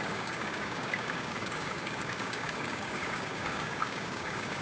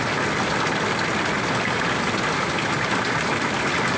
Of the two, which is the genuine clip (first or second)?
second